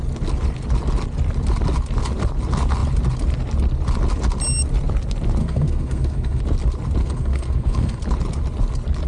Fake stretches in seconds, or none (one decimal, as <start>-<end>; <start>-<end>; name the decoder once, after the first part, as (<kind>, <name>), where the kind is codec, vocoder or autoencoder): 5.4-6.4 (codec, SNAC); 7.0-8.0